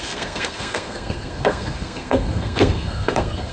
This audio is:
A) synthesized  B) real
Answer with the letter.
A